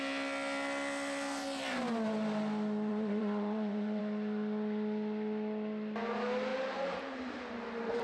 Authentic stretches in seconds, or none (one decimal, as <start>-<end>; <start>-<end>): 0.0-2.9; 4.0-6.5; 7.5-8.0

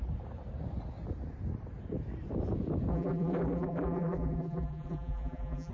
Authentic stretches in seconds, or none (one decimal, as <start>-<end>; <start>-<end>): 0.0-2.9

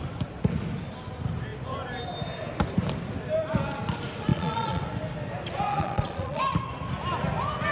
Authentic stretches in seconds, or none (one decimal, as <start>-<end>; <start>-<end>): 0.0-4.3; 4.8-5.7; 6.4-7.7

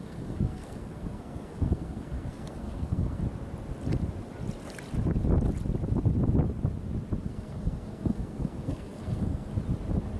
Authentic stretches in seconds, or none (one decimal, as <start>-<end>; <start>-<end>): 3.2-7.2; 9.5-10.2

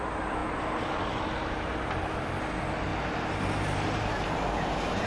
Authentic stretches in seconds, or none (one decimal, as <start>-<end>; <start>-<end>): 0.0-5.1

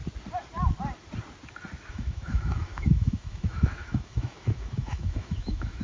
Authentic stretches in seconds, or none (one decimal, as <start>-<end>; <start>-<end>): 0.0-1.9

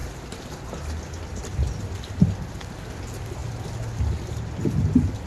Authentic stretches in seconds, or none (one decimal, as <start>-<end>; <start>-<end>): 0.0-5.3

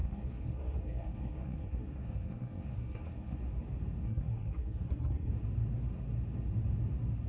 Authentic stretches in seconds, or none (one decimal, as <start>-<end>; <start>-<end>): 3.4-4.0; 5.3-7.3